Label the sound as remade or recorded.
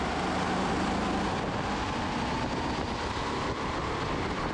recorded